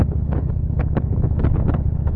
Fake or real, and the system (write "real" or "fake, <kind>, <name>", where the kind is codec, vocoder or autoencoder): fake, codec, HILCodec